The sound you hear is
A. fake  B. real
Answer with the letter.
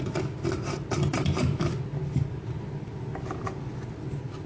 B